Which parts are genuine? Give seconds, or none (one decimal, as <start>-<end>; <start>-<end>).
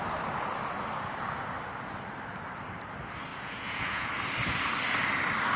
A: 0.0-3.3; 4.1-5.6